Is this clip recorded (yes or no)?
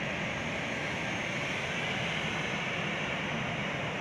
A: yes